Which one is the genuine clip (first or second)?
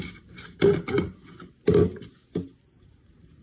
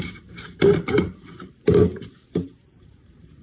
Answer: first